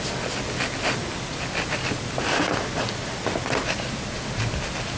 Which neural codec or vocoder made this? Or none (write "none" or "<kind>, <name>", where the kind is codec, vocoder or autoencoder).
none